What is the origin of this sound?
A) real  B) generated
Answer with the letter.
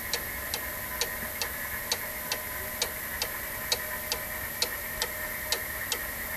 A